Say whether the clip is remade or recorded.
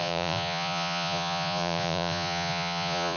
remade